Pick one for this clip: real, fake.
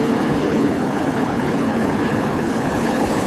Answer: fake